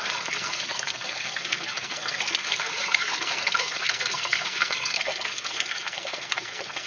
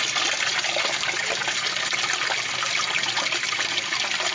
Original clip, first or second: second